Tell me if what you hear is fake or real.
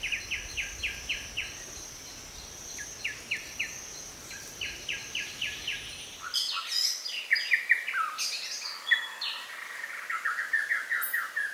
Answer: real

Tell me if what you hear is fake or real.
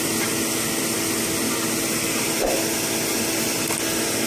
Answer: real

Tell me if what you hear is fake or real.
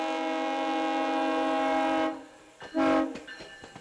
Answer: real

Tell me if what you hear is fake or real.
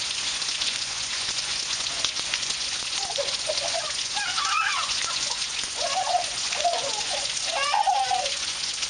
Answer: fake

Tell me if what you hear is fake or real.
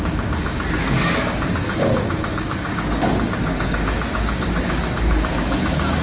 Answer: fake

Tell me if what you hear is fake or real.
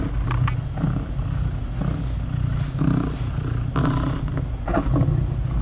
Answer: real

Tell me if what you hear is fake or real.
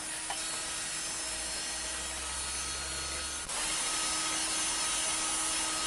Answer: real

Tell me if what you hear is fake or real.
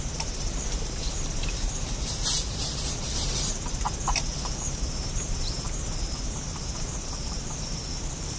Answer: fake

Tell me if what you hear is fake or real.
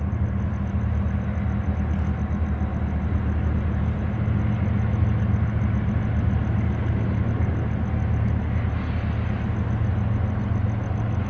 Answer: real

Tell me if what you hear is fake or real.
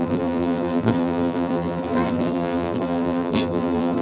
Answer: fake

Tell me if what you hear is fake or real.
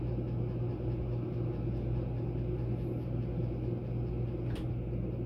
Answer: real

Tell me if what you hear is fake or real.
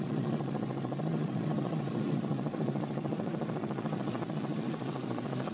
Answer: fake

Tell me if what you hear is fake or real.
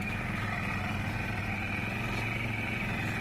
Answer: real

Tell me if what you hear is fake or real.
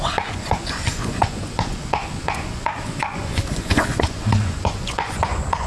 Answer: fake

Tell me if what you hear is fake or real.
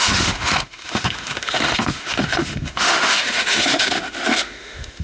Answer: fake